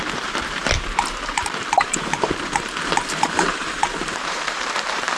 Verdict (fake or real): fake